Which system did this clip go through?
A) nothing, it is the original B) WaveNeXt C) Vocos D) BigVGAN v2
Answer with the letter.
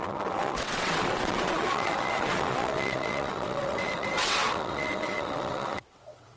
B